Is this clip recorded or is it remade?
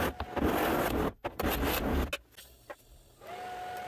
recorded